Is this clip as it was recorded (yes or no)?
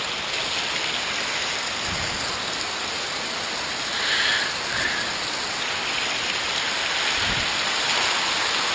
yes